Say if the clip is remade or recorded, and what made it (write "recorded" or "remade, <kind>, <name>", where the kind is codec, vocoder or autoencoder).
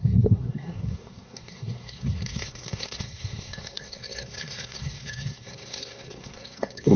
remade, codec, SNAC